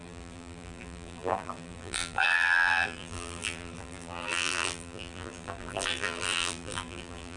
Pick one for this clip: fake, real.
fake